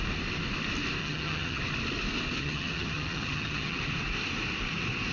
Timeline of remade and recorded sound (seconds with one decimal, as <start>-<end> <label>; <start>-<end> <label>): 0.0-1.0 recorded; 1.0-1.6 remade; 1.6-2.4 recorded; 2.4-3.8 remade; 3.8-5.1 recorded